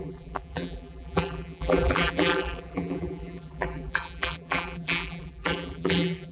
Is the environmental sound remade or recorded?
remade